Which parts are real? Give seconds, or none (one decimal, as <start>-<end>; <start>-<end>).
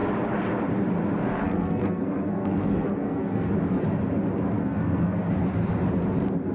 0.0-1.2; 3.5-4.6; 5.3-6.5